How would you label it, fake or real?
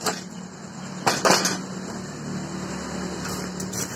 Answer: real